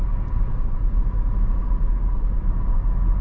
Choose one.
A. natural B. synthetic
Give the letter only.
A